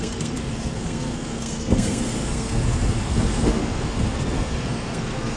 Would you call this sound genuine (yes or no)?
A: no